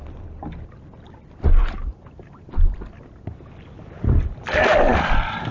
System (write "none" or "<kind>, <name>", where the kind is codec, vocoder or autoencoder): none